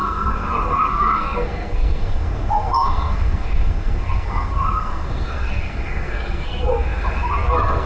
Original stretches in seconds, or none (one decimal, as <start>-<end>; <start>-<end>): none